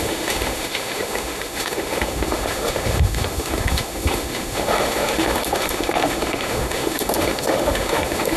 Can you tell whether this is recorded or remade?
remade